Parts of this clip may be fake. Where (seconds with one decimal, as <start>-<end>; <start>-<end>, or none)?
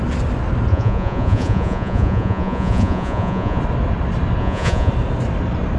0.7-3.6; 4.4-4.9